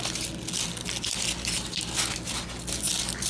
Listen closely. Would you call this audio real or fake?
real